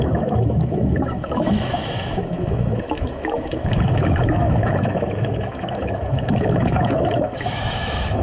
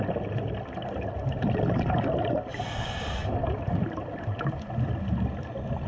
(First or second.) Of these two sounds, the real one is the second